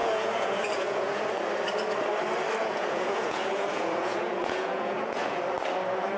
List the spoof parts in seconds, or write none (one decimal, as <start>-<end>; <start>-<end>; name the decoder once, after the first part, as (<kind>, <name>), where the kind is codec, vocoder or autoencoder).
0.0-1.2 (vocoder, Vocos); 2.6-5.4